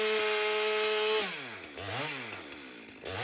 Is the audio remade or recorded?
recorded